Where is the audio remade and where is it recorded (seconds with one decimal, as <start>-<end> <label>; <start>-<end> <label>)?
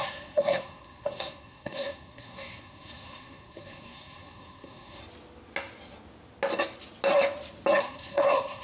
0.0-5.0 remade; 5.0-7.8 recorded; 7.8-8.6 remade